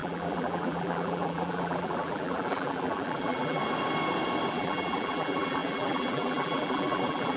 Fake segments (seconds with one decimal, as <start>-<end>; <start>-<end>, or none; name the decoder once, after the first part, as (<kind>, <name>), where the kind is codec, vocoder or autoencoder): 0.0-3.6 (vocoder, BigVGAN v2); 4.5-7.4